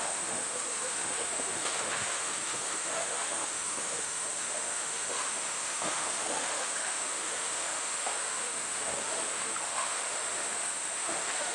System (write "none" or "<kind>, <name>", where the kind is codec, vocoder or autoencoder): autoencoder, DAC-VAE